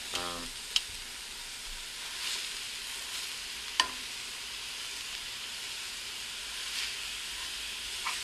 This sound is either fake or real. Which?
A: real